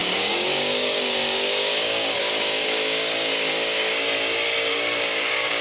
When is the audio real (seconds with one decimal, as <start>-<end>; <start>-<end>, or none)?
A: none